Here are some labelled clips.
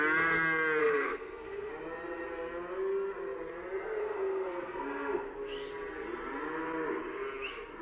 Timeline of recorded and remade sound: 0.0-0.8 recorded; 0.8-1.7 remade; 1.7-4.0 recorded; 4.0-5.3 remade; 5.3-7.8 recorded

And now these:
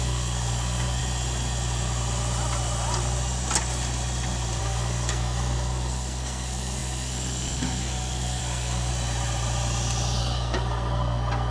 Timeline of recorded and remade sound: 0.0-1.0 remade; 1.0-4.6 recorded; 4.6-8.9 remade; 8.9-10.2 recorded; 10.2-11.5 remade